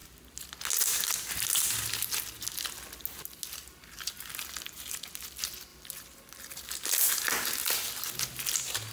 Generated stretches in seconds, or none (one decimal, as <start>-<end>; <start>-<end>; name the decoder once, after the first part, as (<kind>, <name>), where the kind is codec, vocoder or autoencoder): 5.7-7.1 (vocoder, BigVGAN v2)

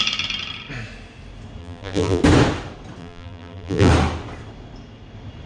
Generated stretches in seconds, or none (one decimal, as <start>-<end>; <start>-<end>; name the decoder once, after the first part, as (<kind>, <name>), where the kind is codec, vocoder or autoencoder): 1.6-2.2 (vocoder, BigVGAN v2); 3.0-3.9

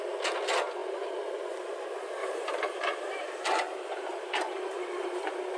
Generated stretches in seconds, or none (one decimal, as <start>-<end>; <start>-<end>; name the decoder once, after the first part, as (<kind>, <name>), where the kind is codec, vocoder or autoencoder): 2.2-5.6 (vocoder, BigVGAN v2)